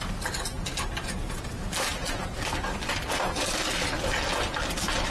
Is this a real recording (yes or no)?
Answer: yes